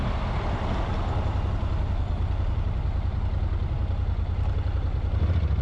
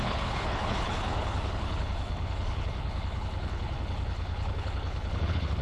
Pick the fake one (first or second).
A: second